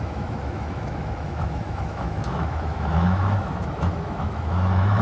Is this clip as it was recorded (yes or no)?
no